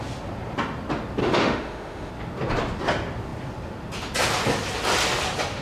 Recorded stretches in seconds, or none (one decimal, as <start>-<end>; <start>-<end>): 0.0-1.2; 2.1-5.6